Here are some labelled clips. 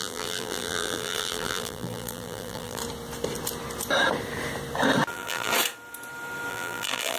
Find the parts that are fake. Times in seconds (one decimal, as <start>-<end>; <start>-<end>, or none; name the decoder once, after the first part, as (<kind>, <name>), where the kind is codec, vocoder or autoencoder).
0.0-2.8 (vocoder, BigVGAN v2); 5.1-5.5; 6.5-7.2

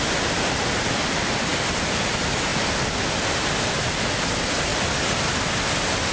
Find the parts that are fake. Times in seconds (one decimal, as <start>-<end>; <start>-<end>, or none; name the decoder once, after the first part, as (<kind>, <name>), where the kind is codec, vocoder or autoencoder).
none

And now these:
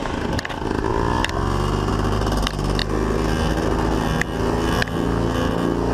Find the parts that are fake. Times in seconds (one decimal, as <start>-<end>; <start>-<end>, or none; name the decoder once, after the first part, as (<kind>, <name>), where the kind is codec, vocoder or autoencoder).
none

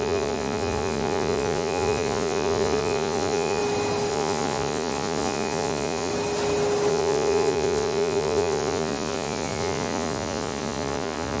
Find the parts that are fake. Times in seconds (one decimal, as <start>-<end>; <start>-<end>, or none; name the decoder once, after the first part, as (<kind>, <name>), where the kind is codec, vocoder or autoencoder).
0.0-3.6 (vocoder, Vocos); 4.1-6.1; 6.9-11.4

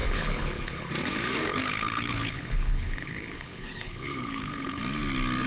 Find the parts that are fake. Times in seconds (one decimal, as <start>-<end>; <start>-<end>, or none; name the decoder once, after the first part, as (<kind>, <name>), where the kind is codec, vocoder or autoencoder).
0.0-0.9 (codec, HILCodec); 1.5-4.8

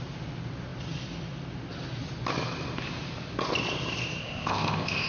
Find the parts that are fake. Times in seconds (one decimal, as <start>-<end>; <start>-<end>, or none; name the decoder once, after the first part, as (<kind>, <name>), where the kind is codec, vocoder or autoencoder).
4.2-5.1 (codec, ZipCodec)

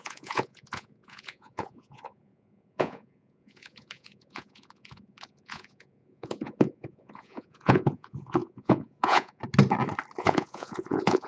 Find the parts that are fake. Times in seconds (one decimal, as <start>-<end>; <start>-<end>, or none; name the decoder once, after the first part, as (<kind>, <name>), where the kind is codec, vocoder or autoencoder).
0.0-9.4 (vocoder, Vocos); 10.2-11.3

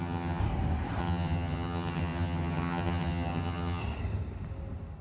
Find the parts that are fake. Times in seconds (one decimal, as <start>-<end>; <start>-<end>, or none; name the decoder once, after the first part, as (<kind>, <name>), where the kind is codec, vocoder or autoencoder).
0.0-0.4 (vocoder, HiFi-GAN); 1.0-3.8